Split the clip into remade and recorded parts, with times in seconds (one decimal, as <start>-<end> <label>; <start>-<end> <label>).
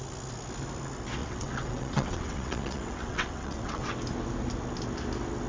0.0-1.2 recorded; 1.2-3.9 remade; 3.9-5.5 recorded